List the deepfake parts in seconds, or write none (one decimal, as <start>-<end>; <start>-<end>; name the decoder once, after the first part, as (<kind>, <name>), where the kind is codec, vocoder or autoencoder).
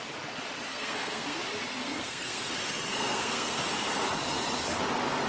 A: 0.7-1.4 (codec, SNAC); 1.8-2.5; 2.9-3.6